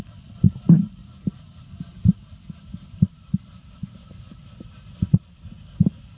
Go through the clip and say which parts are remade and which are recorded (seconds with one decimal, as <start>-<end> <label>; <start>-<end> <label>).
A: 0.0-1.0 recorded; 1.0-3.2 remade; 3.2-4.0 recorded; 4.0-5.4 remade; 5.4-6.2 recorded